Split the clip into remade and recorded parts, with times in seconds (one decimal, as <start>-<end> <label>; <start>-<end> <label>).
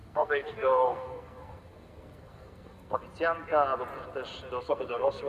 0.0-3.0 remade; 3.0-4.6 recorded; 4.6-5.3 remade